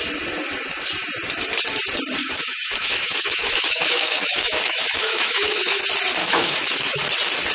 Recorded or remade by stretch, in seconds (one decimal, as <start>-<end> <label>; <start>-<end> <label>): 0.0-2.2 recorded; 2.2-5.8 remade; 5.8-6.2 recorded; 6.2-7.0 remade; 7.0-7.5 recorded